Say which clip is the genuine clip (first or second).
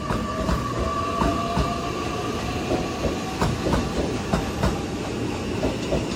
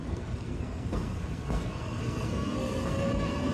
first